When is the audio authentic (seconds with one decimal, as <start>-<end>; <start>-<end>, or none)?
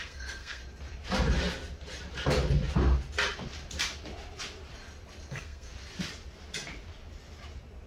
0.6-5.3; 5.7-7.9